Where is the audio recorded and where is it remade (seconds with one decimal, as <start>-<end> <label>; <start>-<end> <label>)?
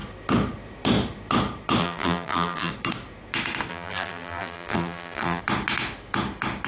0.0-1.8 recorded; 1.8-2.7 remade; 2.7-3.7 recorded; 3.7-5.4 remade; 5.4-6.7 recorded